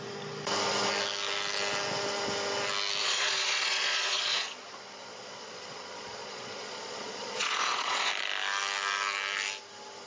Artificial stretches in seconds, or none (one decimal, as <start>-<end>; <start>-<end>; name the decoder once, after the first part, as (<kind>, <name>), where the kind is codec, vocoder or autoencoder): 3.0-8.1 (vocoder, Vocos)